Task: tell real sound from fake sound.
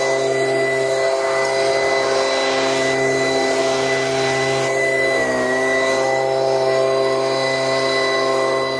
real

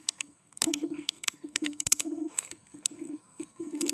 fake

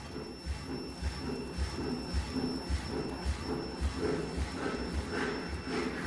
real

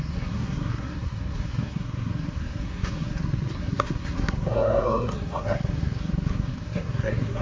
fake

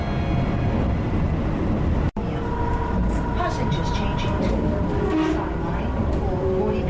real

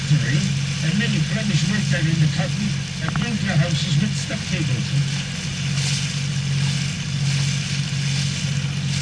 real